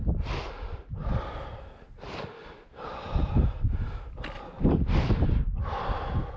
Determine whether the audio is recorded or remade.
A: recorded